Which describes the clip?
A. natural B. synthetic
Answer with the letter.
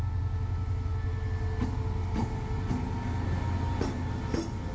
A